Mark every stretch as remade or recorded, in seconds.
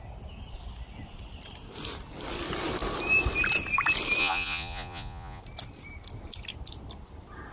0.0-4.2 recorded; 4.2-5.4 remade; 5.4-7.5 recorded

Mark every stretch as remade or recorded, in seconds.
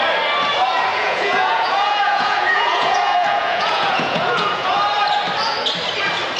0.0-0.9 recorded; 0.9-4.7 remade; 4.7-6.4 recorded